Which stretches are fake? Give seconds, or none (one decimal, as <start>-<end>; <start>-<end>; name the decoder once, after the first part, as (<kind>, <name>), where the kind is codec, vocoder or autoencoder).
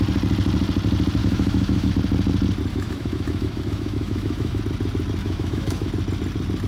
1.2-1.9 (autoencoder, DAC-VAE); 2.7-4.6; 5.2-5.9